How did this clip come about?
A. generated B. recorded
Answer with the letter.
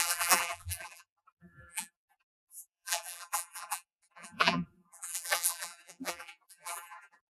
A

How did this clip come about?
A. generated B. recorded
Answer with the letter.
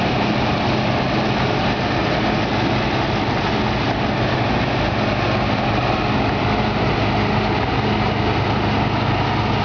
B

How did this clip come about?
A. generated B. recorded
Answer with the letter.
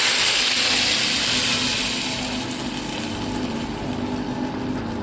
B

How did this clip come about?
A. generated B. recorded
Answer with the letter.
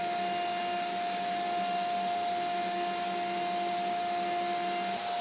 B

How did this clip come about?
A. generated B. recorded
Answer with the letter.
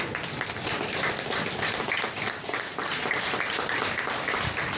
B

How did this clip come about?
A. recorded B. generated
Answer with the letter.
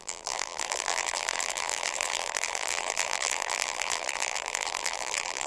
B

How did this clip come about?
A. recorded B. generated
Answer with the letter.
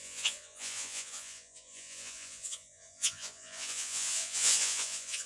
B